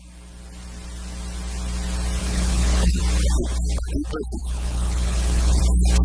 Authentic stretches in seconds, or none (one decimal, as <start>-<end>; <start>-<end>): 0.0-2.2; 3.0-4.4; 5.6-6.0